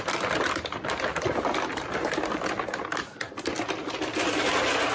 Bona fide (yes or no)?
yes